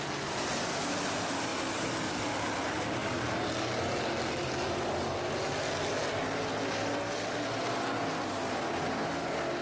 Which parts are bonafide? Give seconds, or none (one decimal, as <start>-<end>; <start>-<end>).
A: 0.0-9.6